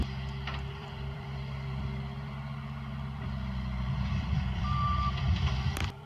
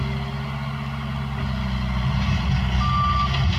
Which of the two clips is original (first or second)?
second